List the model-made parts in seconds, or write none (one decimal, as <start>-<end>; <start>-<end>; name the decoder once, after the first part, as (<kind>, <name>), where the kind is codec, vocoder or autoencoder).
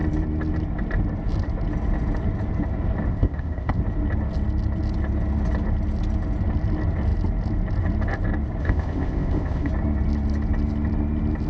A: 3.1-3.8 (codec, ZipCodec); 8.6-9.7